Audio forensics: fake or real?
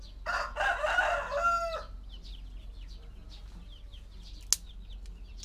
real